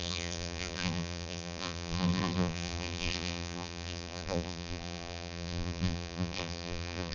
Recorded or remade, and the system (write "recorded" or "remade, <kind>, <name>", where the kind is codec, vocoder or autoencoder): remade, vocoder, BigVGAN v2